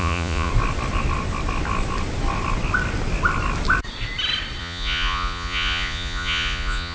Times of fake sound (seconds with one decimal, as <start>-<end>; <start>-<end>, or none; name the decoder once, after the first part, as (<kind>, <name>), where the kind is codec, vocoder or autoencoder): 0.0-0.5 (vocoder, Vocos); 4.6-6.9